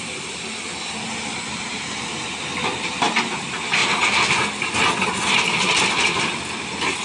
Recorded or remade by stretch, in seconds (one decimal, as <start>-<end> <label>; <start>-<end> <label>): 0.0-7.0 recorded